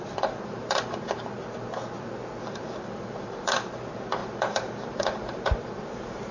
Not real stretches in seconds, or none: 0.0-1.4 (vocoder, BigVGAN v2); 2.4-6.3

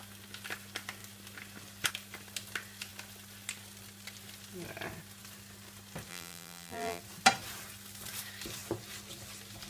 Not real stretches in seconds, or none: 6.1-7.0 (vocoder, BigVGAN v2)

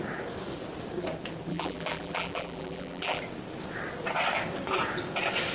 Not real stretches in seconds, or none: 1.5-3.2 (vocoder, BigVGAN v2)

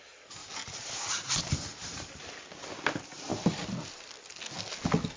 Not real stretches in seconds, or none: none

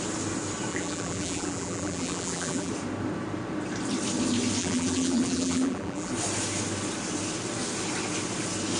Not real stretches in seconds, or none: 0.7-2.7 (vocoder, BigVGAN v2); 4.6-6.1

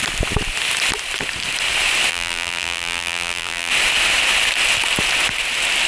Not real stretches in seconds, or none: 2.1-3.7 (vocoder, BigVGAN v2)

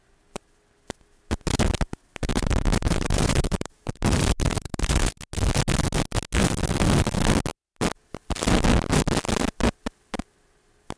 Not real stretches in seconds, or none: 2.3-5.0 (vocoder, BigVGAN v2)

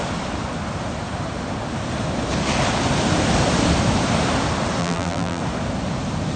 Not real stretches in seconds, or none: 4.8-5.4 (vocoder, BigVGAN v2)